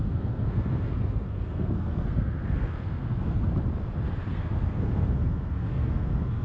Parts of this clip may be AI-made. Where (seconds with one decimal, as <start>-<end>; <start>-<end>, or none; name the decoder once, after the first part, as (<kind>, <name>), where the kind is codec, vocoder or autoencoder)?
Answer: 0.0-3.5 (codec, SNAC); 4.3-6.4